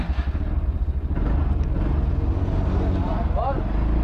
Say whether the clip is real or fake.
real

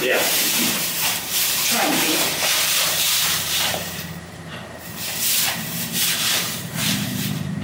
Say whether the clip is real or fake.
fake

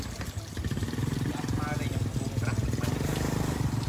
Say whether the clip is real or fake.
real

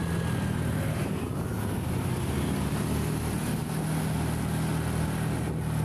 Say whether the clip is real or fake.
real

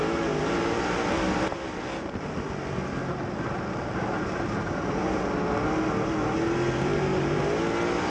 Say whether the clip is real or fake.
real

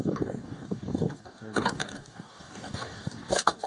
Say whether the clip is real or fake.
fake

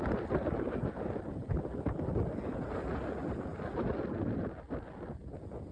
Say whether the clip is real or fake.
real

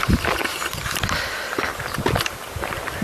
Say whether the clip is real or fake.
real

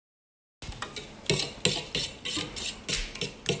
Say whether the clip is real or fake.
real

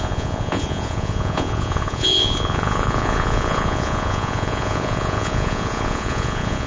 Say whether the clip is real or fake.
fake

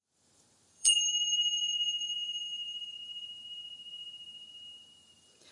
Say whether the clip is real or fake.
fake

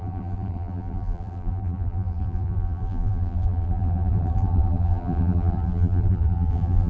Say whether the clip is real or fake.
fake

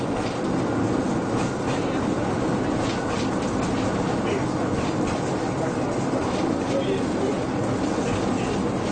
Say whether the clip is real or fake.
real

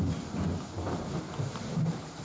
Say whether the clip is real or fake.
fake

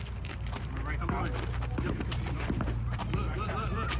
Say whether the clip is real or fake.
fake